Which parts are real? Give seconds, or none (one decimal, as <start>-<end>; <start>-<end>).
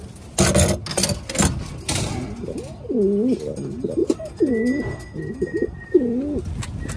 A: 0.0-4.0; 4.8-7.0